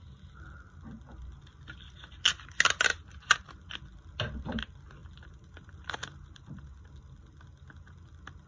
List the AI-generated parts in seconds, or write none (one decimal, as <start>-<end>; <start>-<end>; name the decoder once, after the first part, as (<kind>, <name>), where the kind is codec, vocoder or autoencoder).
2.9-3.7 (vocoder, BigVGAN v2); 5.0-6.9